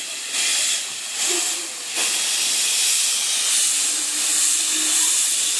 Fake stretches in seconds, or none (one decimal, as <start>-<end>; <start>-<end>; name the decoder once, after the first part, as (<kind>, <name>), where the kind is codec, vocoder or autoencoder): none

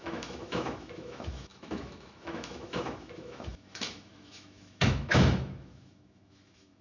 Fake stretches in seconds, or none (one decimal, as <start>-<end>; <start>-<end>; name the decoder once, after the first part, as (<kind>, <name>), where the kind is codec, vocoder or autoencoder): 0.0-6.8 (autoencoder, DAC-VAE)

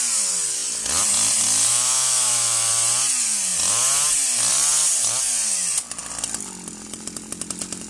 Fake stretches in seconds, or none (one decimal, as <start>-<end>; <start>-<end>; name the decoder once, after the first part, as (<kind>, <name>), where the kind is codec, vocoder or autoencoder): 1.7-2.7 (autoencoder, DAC-VAE)

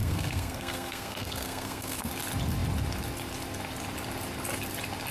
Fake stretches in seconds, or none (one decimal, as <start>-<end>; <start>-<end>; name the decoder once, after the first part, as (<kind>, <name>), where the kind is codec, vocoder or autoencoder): 0.0-2.1 (codec, SNAC)

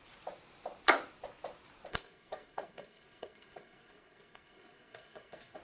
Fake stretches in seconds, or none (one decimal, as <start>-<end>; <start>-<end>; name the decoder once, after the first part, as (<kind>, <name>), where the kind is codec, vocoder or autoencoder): 1.9-5.6 (codec, SNAC)

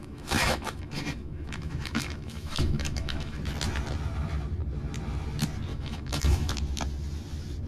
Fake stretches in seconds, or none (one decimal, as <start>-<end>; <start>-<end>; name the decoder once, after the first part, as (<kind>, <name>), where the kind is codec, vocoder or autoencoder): 0.0-3.4 (autoencoder, DAC-VAE); 5.7-6.5

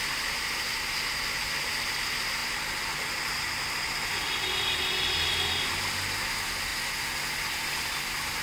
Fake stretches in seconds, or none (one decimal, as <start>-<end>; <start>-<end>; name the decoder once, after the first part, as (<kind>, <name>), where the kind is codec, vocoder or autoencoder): none